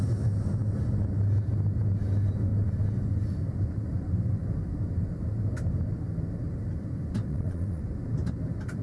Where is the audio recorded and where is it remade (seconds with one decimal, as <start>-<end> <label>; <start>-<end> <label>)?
0.0-7.3 recorded; 7.3-7.8 remade; 7.8-8.8 recorded